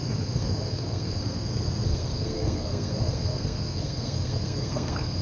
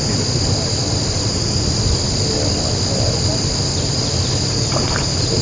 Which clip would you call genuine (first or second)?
second